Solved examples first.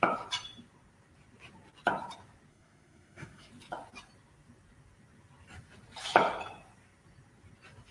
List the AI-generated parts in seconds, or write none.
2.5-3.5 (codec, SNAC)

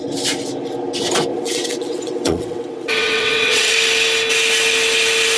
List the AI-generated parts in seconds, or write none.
1.3-3.7 (vocoder, WaveNeXt)

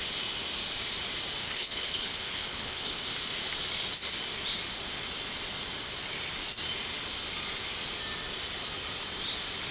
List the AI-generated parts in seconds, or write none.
1.4-3.0 (codec, HILCodec)